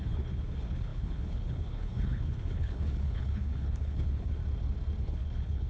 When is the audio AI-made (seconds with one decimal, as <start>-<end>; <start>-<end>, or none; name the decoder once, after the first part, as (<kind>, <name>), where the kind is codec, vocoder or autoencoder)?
0.0-4.4 (codec, HILCodec); 5.0-5.7